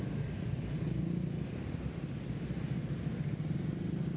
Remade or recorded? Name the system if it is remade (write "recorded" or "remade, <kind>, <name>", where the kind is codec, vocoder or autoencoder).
recorded